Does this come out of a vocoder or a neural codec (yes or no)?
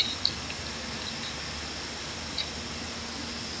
no